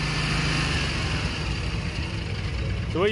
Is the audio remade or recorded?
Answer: recorded